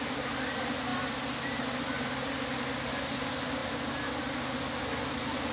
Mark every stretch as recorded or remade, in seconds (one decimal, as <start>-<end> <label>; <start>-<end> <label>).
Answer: 0.0-5.5 recorded